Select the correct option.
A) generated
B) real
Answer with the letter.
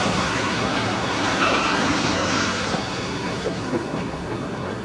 A